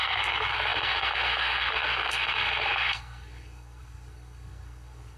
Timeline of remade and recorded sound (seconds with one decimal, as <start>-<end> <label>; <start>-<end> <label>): 0.0-5.2 remade